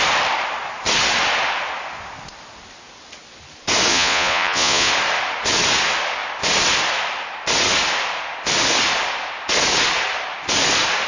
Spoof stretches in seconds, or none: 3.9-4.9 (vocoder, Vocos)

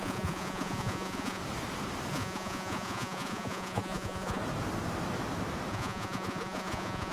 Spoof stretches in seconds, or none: 0.0-1.4 (vocoder, Vocos); 2.1-4.4; 5.7-7.1

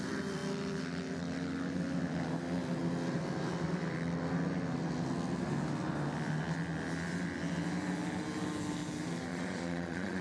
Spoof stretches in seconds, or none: 9.3-10.2 (vocoder, Vocos)

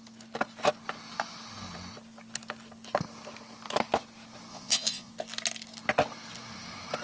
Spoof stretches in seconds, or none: 4.5-5.1 (vocoder, Vocos)

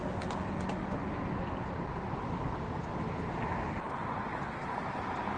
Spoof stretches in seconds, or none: none

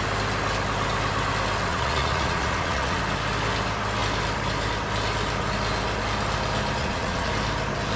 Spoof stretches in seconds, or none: 1.7-3.0 (vocoder, Vocos); 6.8-7.3